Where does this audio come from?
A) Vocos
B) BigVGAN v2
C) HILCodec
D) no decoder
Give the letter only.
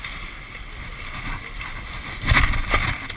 D